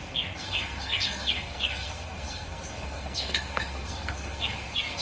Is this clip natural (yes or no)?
no